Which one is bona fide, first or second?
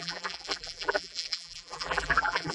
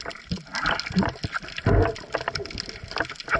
second